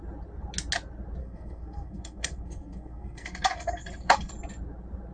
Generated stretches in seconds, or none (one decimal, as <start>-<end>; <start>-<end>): 1.2-4.3